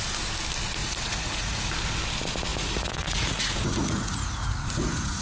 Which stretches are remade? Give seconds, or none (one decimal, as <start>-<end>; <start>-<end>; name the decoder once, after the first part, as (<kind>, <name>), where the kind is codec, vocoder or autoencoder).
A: 0.8-1.7 (vocoder, Vocos); 2.5-5.2